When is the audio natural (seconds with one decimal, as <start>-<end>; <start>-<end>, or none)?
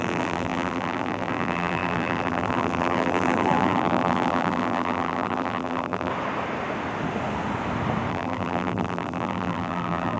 6.1-8.1